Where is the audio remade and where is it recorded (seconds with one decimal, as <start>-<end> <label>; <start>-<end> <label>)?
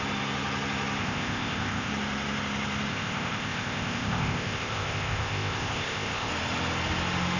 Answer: 0.0-1.0 recorded; 1.0-1.9 remade; 1.9-2.9 recorded; 2.9-6.3 remade; 6.3-7.4 recorded